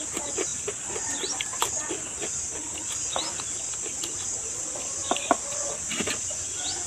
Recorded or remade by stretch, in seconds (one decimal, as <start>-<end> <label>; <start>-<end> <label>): 0.0-6.9 recorded